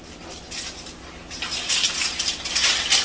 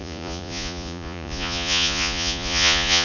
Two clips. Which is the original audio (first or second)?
first